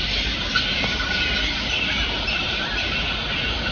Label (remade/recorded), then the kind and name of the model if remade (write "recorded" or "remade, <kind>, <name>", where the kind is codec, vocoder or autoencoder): recorded